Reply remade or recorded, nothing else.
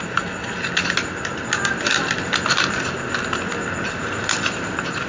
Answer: recorded